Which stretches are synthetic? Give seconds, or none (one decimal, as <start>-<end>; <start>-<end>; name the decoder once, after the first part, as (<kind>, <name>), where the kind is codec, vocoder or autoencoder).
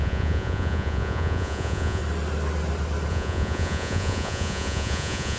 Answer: 0.0-2.0 (vocoder, Vocos); 3.1-5.4